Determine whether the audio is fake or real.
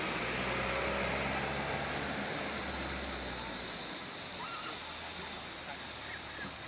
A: real